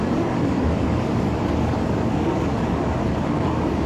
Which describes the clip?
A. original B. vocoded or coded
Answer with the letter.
B